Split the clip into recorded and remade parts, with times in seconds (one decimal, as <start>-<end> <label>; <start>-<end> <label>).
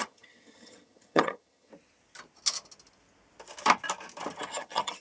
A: 0.0-1.7 remade; 1.7-4.5 recorded; 4.5-5.0 remade